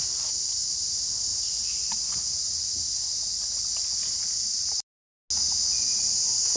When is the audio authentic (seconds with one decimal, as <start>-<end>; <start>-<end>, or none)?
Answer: 0.0-6.6